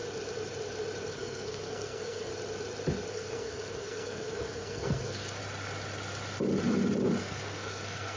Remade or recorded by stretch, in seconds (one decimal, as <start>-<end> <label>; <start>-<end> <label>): 0.0-1.1 recorded; 1.1-2.3 remade; 2.3-3.1 recorded; 3.1-5.4 remade; 5.4-7.2 recorded; 7.2-8.2 remade